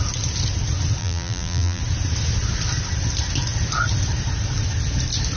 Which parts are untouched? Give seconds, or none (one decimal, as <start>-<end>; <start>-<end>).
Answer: 0.0-1.0; 1.8-5.4